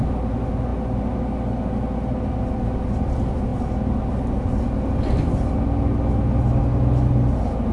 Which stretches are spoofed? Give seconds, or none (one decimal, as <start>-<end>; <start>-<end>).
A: none